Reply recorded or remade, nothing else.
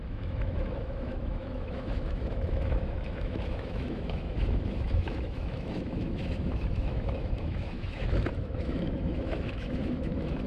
remade